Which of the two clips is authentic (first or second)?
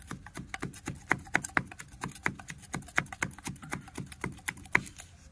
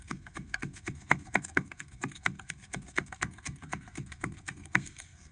first